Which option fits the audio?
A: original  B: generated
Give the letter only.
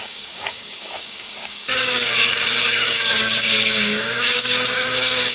B